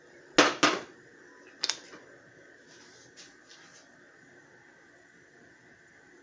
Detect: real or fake real